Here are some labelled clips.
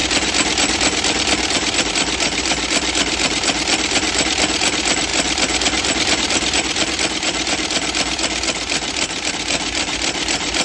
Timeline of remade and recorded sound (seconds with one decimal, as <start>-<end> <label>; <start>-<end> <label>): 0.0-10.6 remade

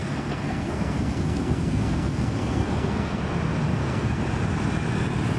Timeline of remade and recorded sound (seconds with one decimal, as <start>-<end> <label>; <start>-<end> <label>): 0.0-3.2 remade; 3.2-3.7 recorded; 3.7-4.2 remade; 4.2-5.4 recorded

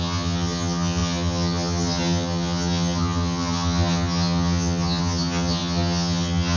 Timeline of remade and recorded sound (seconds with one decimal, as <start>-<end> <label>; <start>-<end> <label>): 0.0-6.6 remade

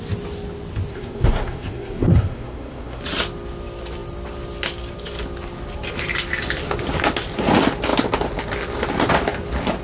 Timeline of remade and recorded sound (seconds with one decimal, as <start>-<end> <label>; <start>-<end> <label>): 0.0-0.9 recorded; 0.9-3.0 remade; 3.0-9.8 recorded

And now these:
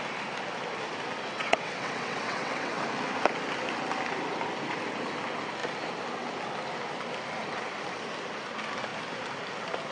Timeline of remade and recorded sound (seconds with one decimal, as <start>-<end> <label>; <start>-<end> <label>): 0.0-1.3 recorded; 1.3-2.8 remade; 2.8-9.9 recorded

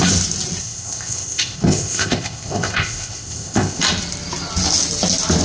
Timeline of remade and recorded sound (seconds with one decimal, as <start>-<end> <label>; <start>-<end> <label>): 0.0-0.6 recorded; 0.6-3.8 remade; 3.8-5.4 recorded